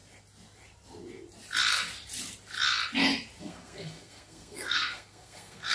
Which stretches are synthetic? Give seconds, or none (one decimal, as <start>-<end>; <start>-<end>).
3.4-5.7